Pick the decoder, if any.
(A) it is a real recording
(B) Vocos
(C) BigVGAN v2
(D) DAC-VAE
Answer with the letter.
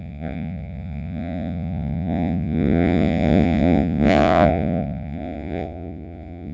B